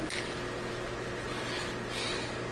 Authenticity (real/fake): real